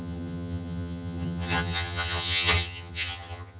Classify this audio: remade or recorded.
remade